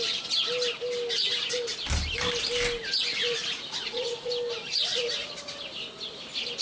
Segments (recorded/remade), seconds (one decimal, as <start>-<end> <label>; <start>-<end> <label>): 0.0-3.2 recorded; 3.2-4.3 remade; 4.3-4.9 recorded; 4.9-5.4 remade; 5.4-6.6 recorded